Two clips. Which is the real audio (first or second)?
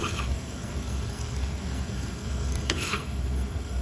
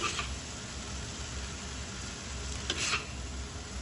second